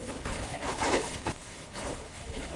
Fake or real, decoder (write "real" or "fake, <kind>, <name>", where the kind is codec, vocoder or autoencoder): fake, codec, HILCodec